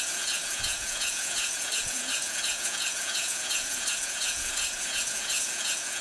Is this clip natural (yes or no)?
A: no